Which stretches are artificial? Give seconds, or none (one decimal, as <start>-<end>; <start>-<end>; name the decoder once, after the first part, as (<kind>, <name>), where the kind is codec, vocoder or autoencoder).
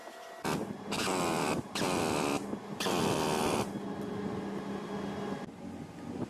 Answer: none